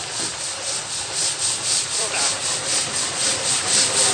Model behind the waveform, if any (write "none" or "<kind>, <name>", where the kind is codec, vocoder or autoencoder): vocoder, BigVGAN v2